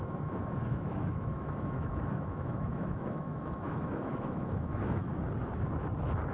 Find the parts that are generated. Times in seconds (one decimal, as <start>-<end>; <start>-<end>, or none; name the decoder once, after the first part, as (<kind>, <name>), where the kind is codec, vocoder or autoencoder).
0.0-5.1 (autoencoder, DAC-VAE)